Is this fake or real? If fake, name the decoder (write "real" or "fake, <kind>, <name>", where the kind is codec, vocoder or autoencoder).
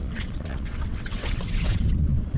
fake, vocoder, WaveNeXt